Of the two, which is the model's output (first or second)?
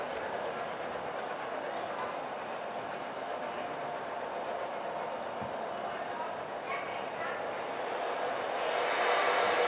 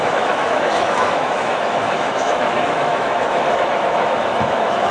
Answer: second